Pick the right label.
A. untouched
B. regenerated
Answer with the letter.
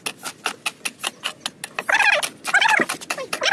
A